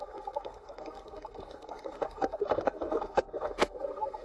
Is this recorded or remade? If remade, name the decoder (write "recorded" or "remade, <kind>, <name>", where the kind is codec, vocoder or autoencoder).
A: remade, codec, SNAC